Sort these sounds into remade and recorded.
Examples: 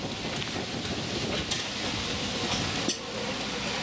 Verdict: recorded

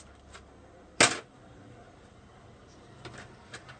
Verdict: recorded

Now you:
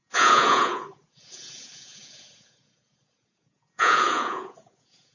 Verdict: remade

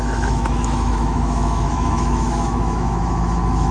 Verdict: remade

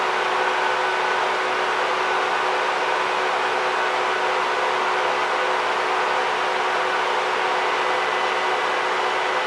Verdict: recorded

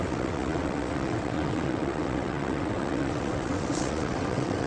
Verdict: remade